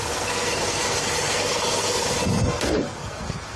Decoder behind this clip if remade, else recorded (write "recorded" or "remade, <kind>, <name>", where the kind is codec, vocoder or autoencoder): remade, codec, SNAC